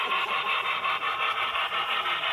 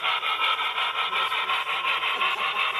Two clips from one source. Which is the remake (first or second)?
first